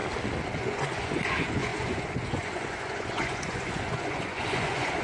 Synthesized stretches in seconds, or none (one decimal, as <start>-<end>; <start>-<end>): 0.6-5.0